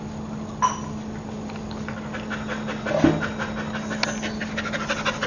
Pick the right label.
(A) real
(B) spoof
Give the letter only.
A